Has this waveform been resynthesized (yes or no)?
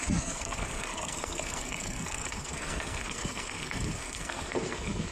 yes